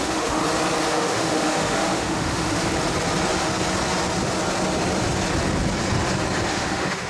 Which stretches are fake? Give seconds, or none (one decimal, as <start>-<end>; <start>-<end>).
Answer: 0.0-0.4; 0.9-2.6; 6.5-7.1